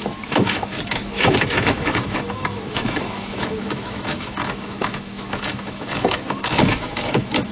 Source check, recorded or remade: remade